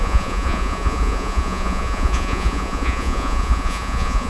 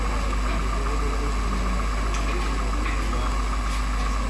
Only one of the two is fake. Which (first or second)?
first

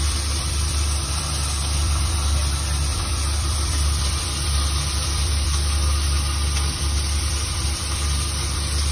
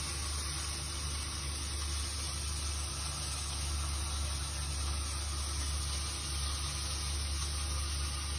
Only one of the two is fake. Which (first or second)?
first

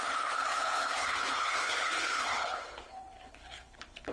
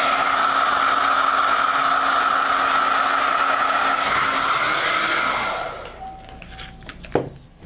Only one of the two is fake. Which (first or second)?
first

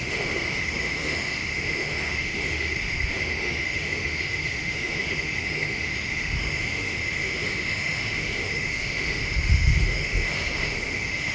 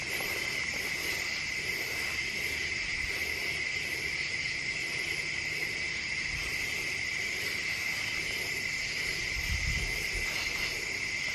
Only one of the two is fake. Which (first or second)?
first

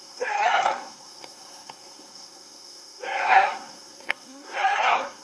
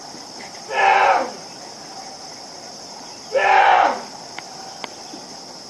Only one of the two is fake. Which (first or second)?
first